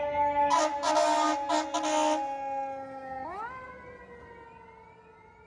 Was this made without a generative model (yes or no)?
yes